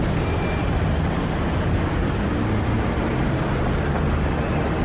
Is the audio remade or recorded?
recorded